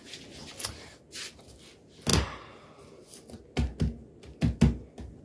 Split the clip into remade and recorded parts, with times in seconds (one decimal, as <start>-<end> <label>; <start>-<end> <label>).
0.0-5.2 recorded